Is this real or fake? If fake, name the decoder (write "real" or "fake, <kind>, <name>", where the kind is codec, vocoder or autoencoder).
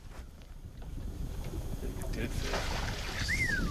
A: fake, vocoder, BigVGAN v2